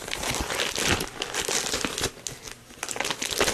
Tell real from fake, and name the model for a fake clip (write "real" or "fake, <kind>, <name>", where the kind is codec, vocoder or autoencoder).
real